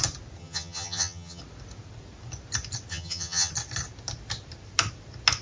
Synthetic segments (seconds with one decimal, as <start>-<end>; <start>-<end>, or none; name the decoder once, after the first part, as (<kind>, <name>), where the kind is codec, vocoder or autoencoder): 0.4-1.4 (vocoder, HiFi-GAN); 2.9-3.5